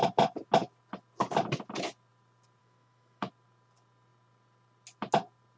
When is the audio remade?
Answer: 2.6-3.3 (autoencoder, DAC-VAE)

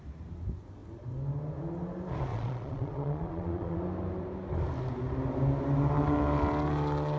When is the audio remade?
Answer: 2.3-3.8 (vocoder, Vocos)

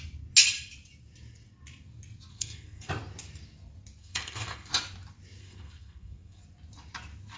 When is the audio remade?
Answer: 2.3-2.9 (codec, SNAC); 4.0-4.7; 5.4-6.4